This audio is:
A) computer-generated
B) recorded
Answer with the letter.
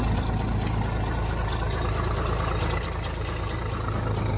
B